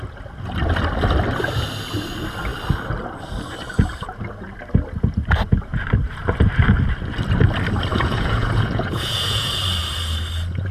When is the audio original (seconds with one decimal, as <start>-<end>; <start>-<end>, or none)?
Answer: 0.0-7.9; 9.5-10.7